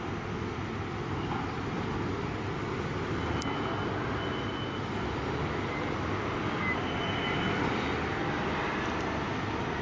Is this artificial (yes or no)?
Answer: no